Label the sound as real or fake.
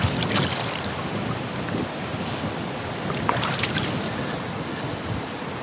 real